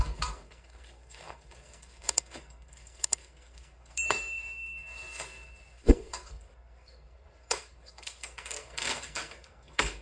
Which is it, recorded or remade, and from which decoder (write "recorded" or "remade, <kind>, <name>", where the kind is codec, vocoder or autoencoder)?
remade, codec, SNAC